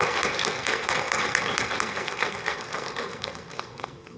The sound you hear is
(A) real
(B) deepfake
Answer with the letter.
B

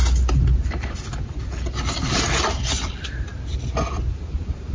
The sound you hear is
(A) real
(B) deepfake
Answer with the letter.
A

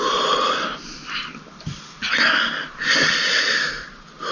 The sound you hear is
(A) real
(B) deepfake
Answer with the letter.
B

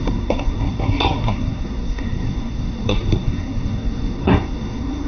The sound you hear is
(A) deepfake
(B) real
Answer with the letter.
A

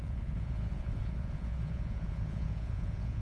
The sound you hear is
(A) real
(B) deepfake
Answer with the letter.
B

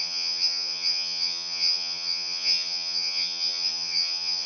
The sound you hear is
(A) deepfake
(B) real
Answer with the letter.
A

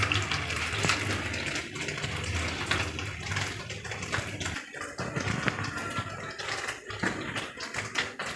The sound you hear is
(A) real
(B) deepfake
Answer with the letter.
A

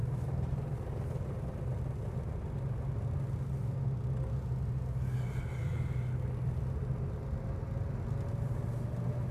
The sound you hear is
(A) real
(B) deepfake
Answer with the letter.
A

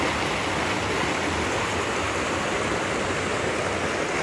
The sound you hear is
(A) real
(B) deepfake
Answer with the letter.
A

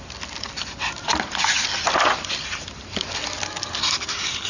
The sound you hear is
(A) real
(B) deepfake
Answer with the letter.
A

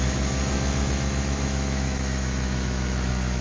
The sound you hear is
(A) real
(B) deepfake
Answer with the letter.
B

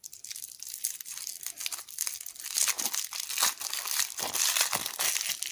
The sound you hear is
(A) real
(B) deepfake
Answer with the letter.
A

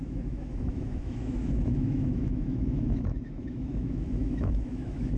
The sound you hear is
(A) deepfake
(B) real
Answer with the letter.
A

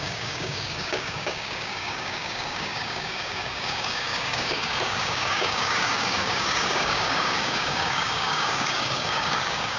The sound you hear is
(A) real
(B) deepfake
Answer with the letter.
B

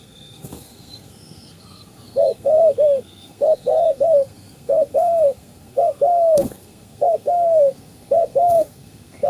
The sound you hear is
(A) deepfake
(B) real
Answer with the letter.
A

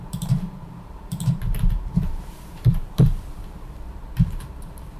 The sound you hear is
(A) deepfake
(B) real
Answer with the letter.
A